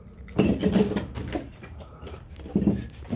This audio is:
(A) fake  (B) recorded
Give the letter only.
B